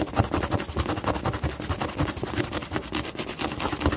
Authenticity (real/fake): real